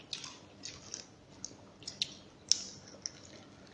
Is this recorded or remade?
recorded